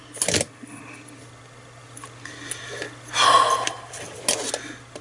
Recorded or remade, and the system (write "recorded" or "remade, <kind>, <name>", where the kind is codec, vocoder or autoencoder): recorded